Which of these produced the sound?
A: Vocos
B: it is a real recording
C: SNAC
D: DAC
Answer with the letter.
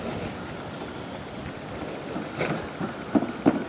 B